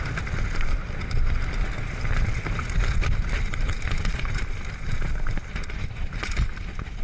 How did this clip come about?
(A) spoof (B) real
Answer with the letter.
B